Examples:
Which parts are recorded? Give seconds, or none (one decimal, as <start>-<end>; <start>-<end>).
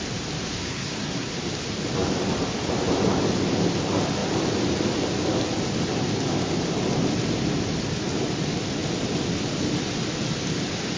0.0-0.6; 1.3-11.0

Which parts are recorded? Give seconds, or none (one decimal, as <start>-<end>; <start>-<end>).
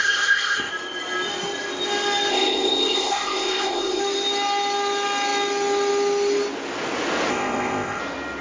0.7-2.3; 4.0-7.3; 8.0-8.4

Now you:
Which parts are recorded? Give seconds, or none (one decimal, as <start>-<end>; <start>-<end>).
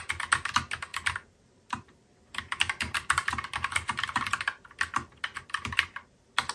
0.0-0.9; 4.3-6.5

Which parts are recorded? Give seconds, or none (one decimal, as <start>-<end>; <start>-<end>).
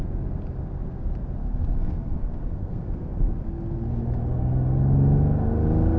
0.0-1.4; 3.3-6.0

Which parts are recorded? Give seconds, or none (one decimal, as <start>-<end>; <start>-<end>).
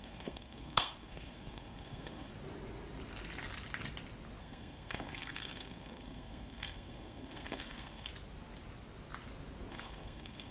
2.3-4.4; 8.1-9.7